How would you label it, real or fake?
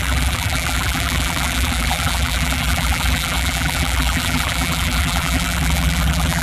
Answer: fake